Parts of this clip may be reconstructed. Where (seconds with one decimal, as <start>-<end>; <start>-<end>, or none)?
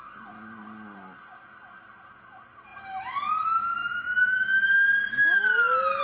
none